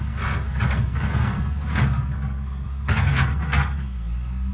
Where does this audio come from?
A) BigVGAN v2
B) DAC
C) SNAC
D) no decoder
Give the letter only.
C